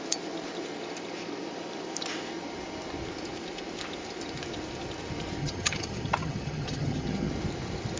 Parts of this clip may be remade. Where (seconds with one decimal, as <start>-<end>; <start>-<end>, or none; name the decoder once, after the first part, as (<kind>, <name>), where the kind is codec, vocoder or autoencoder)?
5.4-7.3 (vocoder, HiFi-GAN)